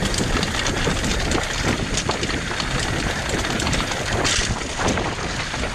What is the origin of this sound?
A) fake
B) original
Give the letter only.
B